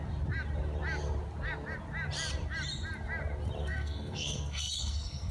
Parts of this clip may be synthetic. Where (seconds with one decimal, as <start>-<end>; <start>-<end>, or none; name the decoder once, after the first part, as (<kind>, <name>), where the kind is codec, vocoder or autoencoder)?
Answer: 3.6-5.3 (codec, SNAC)